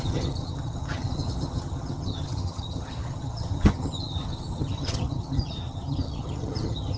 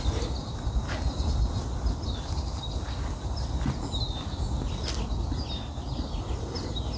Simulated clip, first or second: first